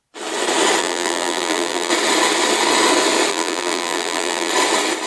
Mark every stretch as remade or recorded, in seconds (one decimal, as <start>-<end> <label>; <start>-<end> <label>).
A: 0.0-0.8 recorded; 0.8-1.9 remade; 1.9-3.3 recorded; 3.3-4.5 remade; 4.5-5.1 recorded